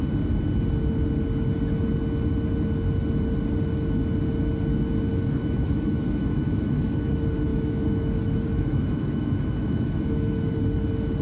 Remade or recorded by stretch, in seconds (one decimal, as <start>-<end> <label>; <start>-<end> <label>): 0.0-5.1 recorded; 5.1-7.1 remade; 7.1-7.5 recorded; 7.5-10.5 remade; 10.5-11.2 recorded